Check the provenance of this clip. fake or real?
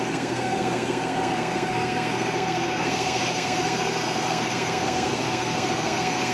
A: fake